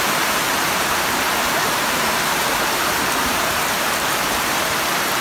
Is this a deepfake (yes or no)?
yes